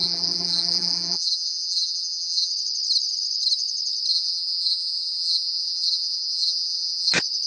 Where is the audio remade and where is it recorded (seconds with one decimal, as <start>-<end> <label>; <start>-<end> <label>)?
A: 0.0-2.5 remade; 2.5-4.1 recorded; 4.1-7.1 remade; 7.1-7.5 recorded